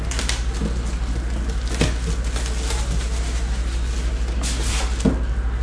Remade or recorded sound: recorded